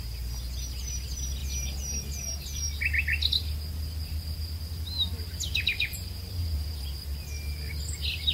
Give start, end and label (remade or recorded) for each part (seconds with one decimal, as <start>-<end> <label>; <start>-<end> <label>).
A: 0.0-8.3 recorded